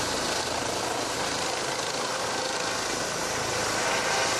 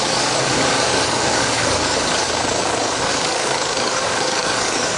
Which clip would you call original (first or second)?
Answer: first